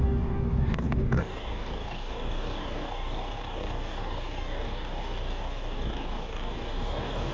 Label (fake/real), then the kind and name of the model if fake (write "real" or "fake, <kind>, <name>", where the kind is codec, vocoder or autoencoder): fake, codec, DAC